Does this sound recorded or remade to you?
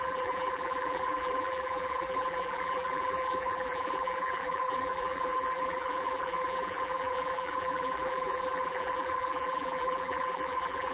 remade